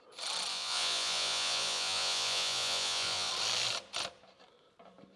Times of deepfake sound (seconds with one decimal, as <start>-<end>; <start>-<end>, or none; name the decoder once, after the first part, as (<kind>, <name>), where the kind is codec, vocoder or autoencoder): 0.5-3.3 (vocoder, Vocos)

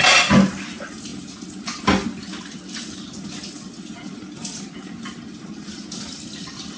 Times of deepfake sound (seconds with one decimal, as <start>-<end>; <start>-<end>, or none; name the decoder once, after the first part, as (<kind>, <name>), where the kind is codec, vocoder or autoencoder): none

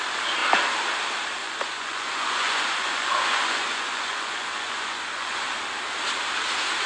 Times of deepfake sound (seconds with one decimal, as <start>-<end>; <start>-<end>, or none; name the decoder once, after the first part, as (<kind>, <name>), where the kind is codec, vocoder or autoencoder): 1.4-5.5 (vocoder, Vocos)

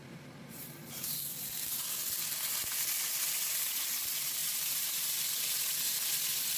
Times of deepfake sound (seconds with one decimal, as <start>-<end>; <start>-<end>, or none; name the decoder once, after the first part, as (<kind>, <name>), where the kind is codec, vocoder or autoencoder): 0.0-0.9 (vocoder, BigVGAN v2); 4.4-5.2